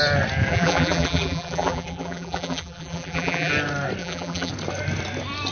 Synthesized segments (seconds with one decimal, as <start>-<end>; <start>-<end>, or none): 0.5-3.5; 4.0-4.5